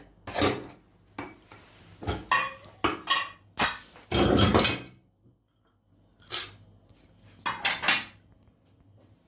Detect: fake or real real